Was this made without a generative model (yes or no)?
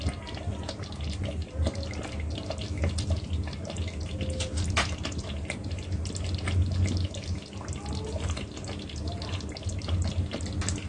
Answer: yes